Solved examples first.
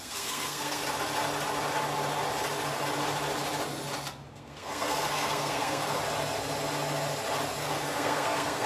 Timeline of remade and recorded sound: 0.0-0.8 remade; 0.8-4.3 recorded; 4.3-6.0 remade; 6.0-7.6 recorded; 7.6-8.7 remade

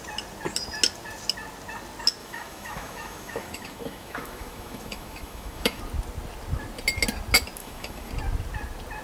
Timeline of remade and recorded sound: 0.0-2.2 recorded; 2.2-5.8 remade; 5.8-7.6 recorded; 7.6-8.1 remade; 8.1-9.0 recorded

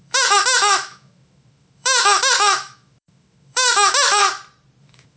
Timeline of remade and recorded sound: 0.0-4.2 remade; 4.2-4.8 recorded; 4.8-5.2 remade

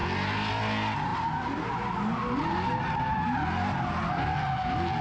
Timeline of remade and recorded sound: 0.0-5.0 recorded

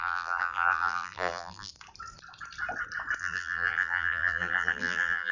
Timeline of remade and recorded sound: 0.0-1.7 remade; 1.7-3.2 recorded; 3.2-5.3 remade

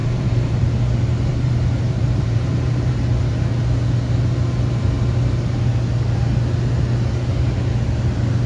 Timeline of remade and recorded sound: 0.0-0.6 remade; 0.6-1.3 recorded; 1.3-3.3 remade; 3.3-8.5 recorded

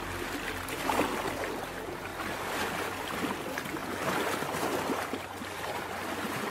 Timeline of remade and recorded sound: 0.0-6.5 recorded